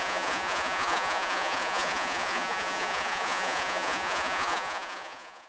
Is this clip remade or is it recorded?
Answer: remade